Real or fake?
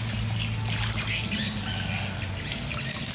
real